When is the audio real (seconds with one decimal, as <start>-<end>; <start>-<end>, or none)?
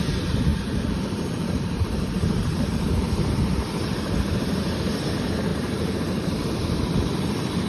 0.0-0.5; 3.1-5.5; 6.4-7.7